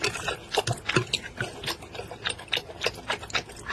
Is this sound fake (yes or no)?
no